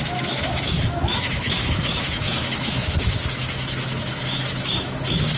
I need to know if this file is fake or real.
fake